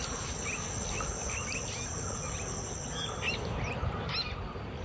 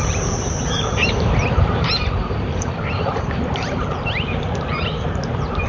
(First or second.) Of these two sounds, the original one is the first